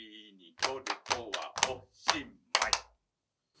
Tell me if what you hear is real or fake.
real